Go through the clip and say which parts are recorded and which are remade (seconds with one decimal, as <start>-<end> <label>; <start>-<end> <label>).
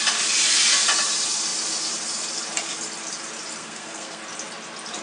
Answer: 0.0-3.6 recorded; 3.6-4.2 remade; 4.2-5.0 recorded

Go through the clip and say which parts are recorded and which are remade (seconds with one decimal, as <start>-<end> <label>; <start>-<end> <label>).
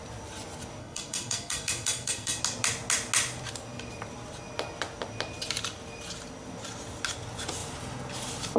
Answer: 0.0-0.8 recorded; 0.8-2.4 remade; 2.4-8.6 recorded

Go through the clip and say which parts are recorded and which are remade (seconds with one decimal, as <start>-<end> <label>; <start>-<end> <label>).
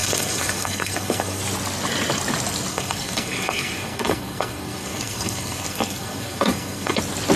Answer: 0.0-1.4 remade; 1.4-2.7 recorded; 2.7-7.0 remade; 7.0-7.4 recorded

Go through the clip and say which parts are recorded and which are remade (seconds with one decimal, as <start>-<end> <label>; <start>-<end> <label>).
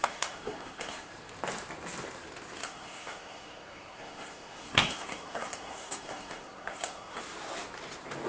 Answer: 0.0-1.1 remade; 1.1-2.6 recorded; 2.6-7.2 remade; 7.2-8.3 recorded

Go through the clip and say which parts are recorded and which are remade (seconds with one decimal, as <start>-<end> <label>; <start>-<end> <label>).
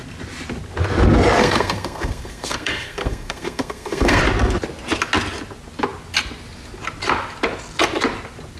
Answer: 0.0-1.4 recorded; 1.4-4.2 remade; 4.2-8.6 recorded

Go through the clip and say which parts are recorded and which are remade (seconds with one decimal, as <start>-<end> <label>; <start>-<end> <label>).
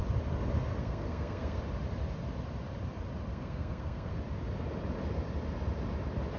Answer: 0.0-0.8 recorded; 0.8-1.6 remade; 1.6-3.3 recorded; 3.3-4.1 remade; 4.1-6.4 recorded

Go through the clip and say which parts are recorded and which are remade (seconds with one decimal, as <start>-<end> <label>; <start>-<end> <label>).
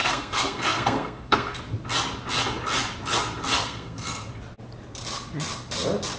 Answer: 0.0-1.6 remade; 1.6-3.6 recorded; 3.6-4.3 remade; 4.3-6.2 recorded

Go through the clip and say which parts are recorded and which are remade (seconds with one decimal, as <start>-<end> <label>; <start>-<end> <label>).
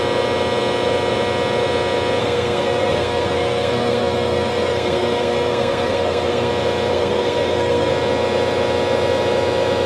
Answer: 0.0-2.2 recorded; 2.2-6.5 remade; 6.5-6.9 recorded; 6.9-7.9 remade; 7.9-9.9 recorded